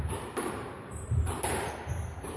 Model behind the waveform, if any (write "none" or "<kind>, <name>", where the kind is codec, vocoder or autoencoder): vocoder, BigVGAN v2